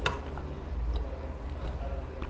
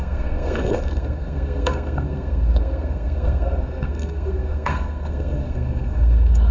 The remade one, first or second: second